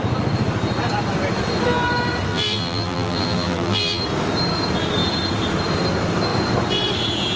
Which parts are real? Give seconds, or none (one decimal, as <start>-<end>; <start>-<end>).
0.0-2.3; 4.0-7.4